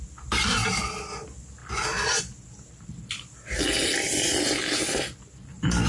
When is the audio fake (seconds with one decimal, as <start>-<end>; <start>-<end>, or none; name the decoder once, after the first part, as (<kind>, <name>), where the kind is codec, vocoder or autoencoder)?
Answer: none

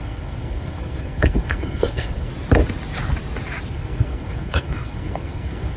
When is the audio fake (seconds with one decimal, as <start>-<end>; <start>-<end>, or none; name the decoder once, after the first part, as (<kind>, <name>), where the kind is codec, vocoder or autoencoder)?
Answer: 0.0-2.3 (codec, SNAC); 3.7-5.8

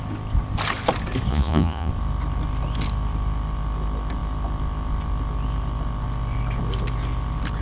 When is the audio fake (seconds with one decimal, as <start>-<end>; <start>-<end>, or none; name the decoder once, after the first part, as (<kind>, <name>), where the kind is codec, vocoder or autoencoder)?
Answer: 1.3-1.9 (vocoder, Vocos)

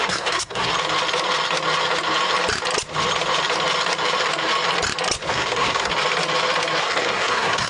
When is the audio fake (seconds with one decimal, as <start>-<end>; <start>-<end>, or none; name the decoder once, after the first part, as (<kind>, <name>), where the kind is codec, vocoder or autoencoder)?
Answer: 0.0-0.7 (codec, SNAC); 5.3-5.9; 6.8-7.7

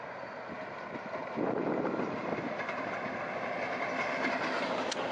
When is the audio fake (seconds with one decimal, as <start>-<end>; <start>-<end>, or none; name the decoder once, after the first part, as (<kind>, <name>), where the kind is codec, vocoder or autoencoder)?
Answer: none